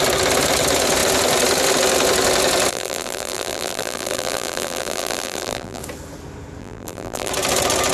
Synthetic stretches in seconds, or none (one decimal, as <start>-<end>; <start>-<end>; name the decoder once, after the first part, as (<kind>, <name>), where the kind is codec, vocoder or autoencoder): 2.7-5.8 (vocoder, BigVGAN v2); 6.6-7.3